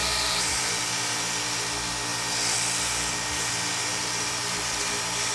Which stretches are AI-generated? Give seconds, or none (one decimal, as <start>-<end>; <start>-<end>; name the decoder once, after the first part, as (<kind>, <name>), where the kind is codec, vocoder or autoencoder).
0.0-0.6 (vocoder, BigVGAN v2); 3.9-4.6